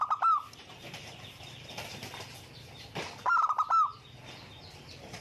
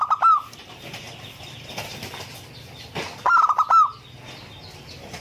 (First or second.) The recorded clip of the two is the second